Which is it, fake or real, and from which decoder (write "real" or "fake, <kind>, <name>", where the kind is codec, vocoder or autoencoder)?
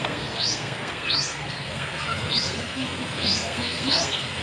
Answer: fake, codec, SNAC